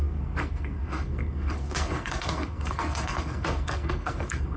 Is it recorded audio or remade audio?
remade